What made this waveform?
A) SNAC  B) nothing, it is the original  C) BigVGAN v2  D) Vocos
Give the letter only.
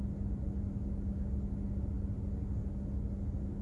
B